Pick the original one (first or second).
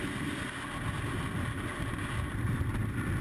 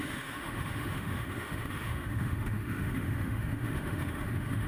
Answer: first